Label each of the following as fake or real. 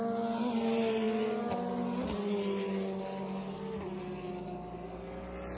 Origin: real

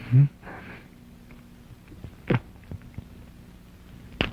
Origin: real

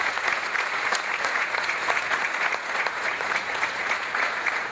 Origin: fake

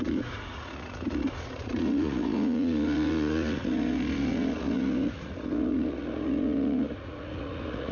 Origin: fake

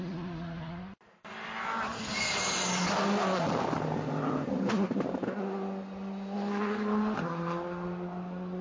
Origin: real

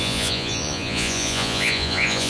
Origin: fake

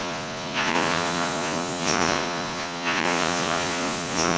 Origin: fake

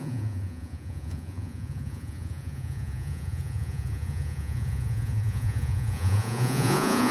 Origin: fake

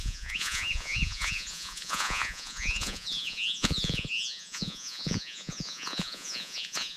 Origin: fake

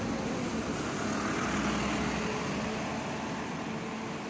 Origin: real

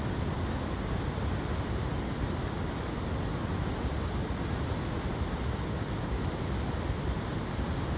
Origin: real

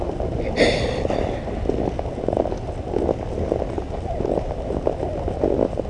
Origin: real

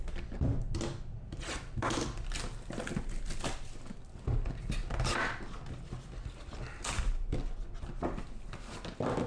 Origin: real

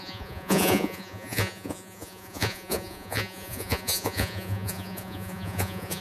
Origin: fake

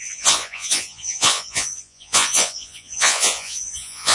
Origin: fake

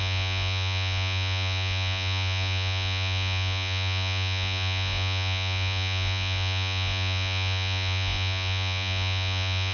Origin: fake